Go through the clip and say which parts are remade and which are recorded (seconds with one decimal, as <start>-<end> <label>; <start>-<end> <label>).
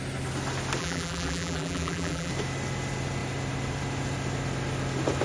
0.0-0.8 recorded; 0.8-2.3 remade; 2.3-5.2 recorded